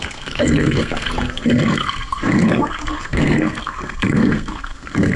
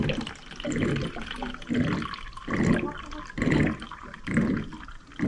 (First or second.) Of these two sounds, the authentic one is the second